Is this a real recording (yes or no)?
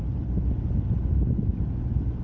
yes